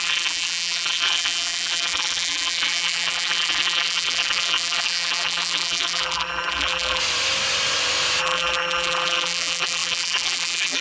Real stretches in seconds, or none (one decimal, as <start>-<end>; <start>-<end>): 7.0-8.2